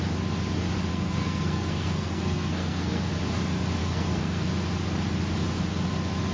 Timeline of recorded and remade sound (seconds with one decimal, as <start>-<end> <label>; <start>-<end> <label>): 0.0-0.9 recorded; 0.9-3.1 remade; 3.1-3.8 recorded; 3.8-4.4 remade; 4.4-6.3 recorded